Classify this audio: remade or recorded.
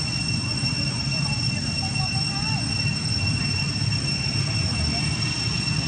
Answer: recorded